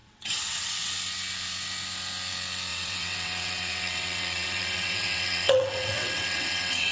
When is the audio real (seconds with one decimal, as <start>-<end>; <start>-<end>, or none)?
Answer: 0.9-2.7